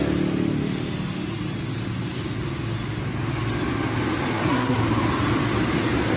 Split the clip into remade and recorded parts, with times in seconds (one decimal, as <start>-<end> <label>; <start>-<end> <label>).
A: 0.0-4.3 recorded; 4.3-4.8 remade; 4.8-6.2 recorded